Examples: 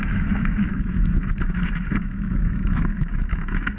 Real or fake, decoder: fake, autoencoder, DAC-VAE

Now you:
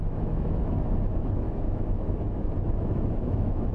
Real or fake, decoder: fake, autoencoder, DAC-VAE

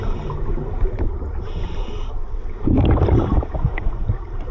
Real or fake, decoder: real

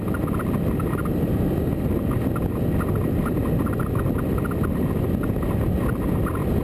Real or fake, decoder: real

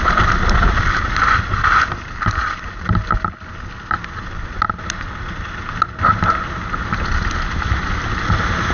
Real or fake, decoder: real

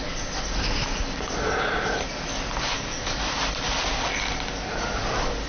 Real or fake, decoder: real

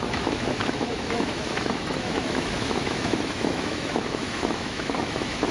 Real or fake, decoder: fake, autoencoder, DAC-VAE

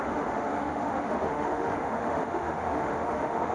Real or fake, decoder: fake, autoencoder, DAC-VAE